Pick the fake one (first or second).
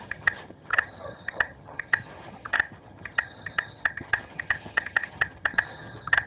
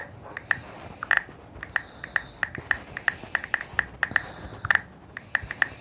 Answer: first